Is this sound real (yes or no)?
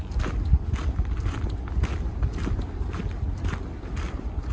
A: yes